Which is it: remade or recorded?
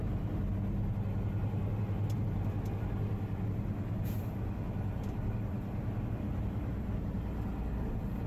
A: recorded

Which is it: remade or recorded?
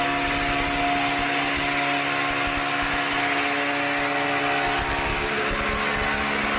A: recorded